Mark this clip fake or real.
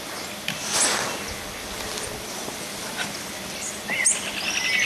real